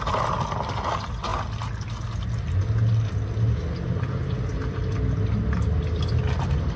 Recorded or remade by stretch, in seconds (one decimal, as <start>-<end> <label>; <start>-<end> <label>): 0.0-1.3 recorded; 1.3-1.8 remade; 1.8-6.8 recorded